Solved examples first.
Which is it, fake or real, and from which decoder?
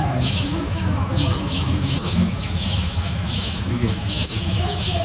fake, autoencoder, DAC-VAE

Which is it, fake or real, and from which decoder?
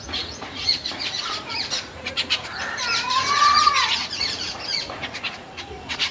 fake, vocoder, Vocos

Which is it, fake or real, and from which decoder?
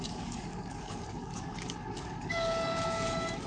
fake, codec, DAC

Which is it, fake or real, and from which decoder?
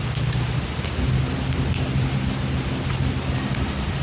real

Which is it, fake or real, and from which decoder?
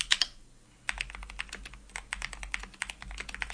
real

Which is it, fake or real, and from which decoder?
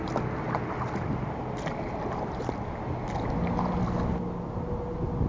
real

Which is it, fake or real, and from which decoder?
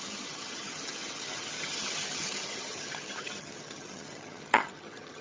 fake, vocoder, HiFi-GAN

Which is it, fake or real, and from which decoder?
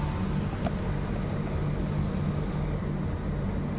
real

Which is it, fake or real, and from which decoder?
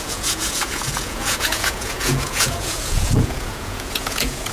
fake, vocoder, Vocos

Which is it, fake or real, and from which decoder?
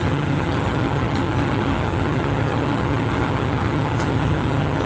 fake, vocoder, HiFi-GAN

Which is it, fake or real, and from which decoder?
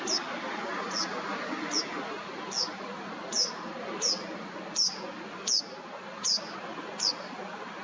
real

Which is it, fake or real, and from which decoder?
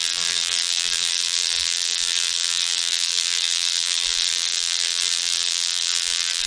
fake, vocoder, BigVGAN v2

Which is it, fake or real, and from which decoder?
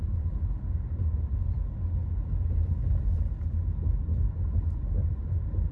real